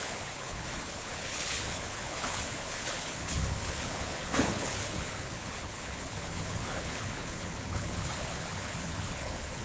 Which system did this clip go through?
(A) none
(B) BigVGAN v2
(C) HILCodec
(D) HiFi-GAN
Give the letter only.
C